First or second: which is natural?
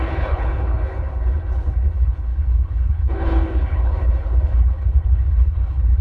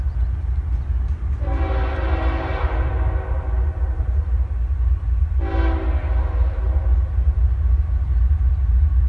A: second